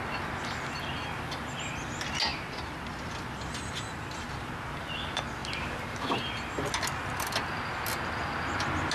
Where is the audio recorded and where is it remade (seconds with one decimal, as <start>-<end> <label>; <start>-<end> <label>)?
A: 0.0-8.9 recorded